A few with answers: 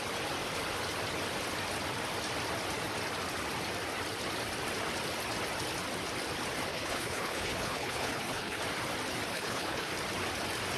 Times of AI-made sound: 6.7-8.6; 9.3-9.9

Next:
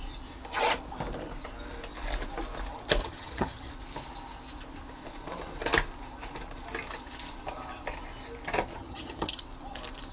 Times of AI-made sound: 3.0-3.7; 8.8-9.4

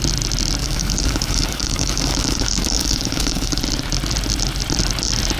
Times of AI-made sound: 0.6-3.6

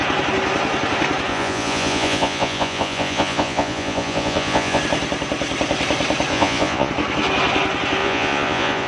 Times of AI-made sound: 1.3-4.8; 6.3-6.9; 8.0-8.9

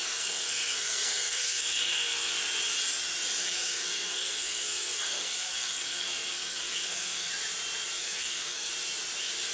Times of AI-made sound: 0.0-2.3; 3.4-7.3; 8.0-8.7

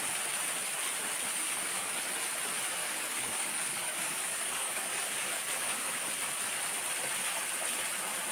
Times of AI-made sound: 1.3-1.9; 2.8-6.1

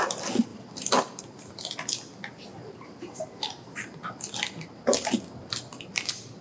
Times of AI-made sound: 2.5-4.0

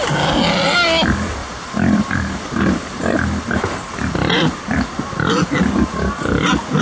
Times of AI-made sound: 1.4-5.5